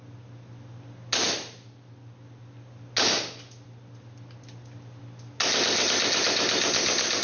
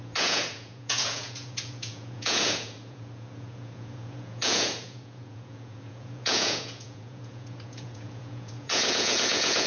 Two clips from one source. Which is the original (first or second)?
first